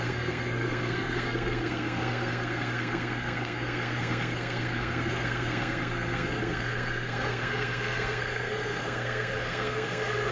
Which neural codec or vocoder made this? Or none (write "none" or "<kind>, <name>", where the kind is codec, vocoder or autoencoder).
codec, SNAC